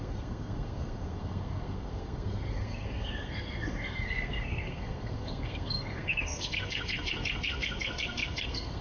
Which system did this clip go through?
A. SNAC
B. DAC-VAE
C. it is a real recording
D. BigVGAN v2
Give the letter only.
A